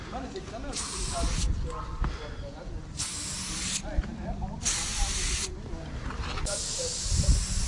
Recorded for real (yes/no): yes